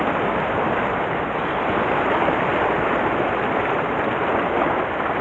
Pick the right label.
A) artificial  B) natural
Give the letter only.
B